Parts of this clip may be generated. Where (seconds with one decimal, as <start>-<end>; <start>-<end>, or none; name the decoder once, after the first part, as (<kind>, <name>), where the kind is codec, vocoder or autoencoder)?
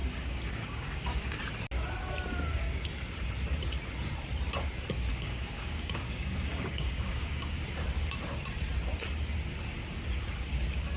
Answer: 0.0-1.4 (codec, DAC); 5.1-7.6